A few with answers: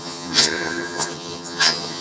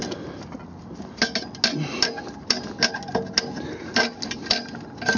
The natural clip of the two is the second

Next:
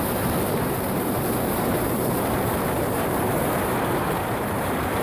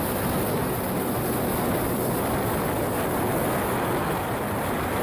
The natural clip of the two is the second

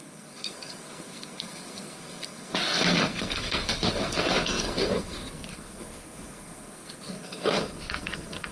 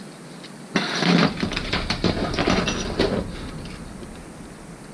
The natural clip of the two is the second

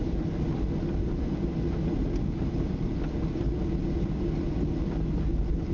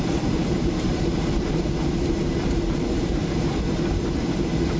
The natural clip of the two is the first